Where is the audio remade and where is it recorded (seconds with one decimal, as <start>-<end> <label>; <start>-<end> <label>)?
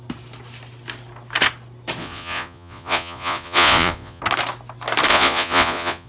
0.0-2.0 recorded; 2.0-4.2 remade; 4.2-5.1 recorded; 5.1-6.1 remade